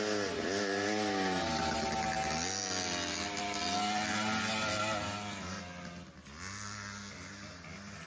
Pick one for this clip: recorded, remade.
recorded